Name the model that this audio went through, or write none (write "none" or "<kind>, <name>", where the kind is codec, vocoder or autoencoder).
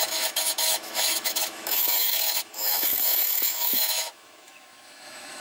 autoencoder, DAC-VAE